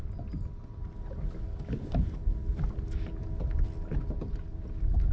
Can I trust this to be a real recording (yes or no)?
yes